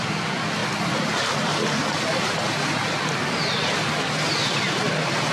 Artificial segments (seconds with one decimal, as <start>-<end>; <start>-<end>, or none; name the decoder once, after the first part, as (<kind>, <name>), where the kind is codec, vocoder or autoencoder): none